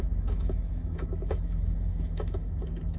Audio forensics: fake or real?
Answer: fake